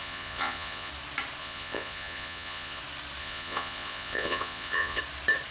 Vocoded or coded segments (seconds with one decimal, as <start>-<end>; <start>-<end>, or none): 0.0-0.9; 1.4-2.8; 3.2-5.0